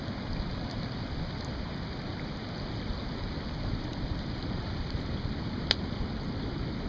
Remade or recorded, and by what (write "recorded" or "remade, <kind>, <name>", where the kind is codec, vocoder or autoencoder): recorded